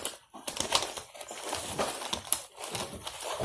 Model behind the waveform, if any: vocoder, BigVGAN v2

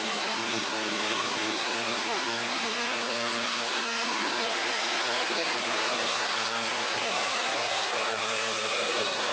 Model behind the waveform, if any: codec, SNAC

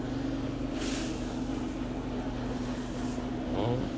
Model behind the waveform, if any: none